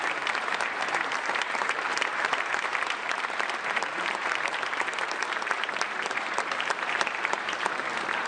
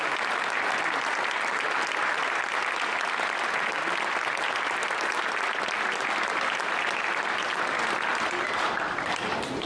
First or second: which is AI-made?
first